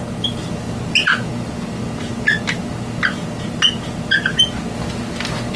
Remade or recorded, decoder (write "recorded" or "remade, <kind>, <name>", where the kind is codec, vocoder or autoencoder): recorded